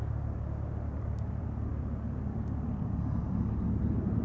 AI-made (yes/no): no